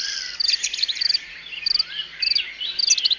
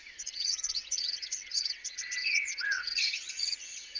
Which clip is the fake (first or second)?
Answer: second